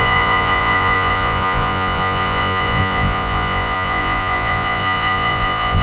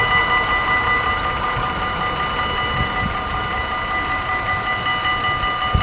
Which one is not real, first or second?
first